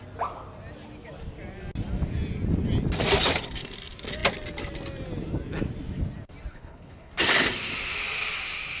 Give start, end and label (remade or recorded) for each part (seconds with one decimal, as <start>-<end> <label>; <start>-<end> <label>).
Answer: 0.0-6.5 recorded; 6.5-7.1 remade; 7.1-8.8 recorded